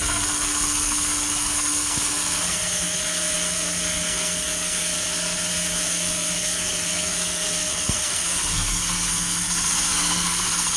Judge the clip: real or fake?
fake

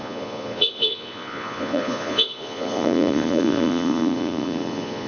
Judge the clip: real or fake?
fake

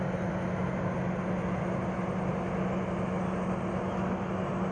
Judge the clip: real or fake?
real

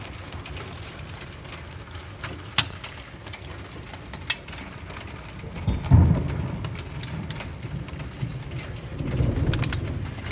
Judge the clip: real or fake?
real